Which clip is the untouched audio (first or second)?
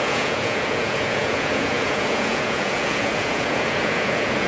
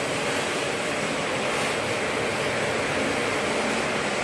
second